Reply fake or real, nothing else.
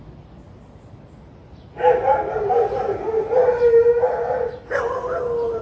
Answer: real